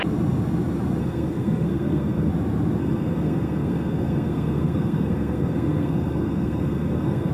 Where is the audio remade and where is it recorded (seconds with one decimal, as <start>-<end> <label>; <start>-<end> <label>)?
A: 0.0-1.0 recorded; 1.0-2.3 remade; 2.3-2.8 recorded; 2.8-7.3 remade